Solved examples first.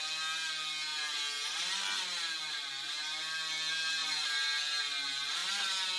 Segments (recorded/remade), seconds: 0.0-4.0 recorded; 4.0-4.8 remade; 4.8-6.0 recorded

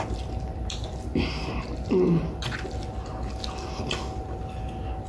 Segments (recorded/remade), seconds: 0.0-5.1 recorded

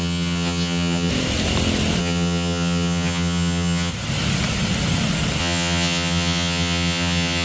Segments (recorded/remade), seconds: 0.0-1.1 remade; 1.1-2.0 recorded; 2.0-3.9 remade; 3.9-5.4 recorded; 5.4-7.4 remade

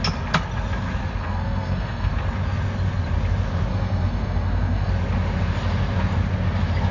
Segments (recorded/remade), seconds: 0.0-1.2 recorded; 1.2-2.1 remade; 2.1-3.7 recorded; 3.7-4.9 remade; 4.9-6.9 recorded

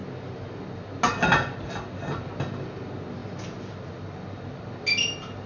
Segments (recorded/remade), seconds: 0.0-5.5 recorded

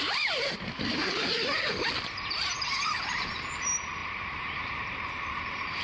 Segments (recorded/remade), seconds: 0.0-1.5 remade; 1.5-2.9 recorded; 2.9-5.8 remade

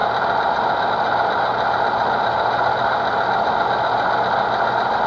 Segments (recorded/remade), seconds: 0.0-5.1 recorded